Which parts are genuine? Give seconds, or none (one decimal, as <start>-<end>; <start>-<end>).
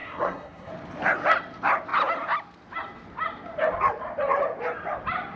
0.7-5.4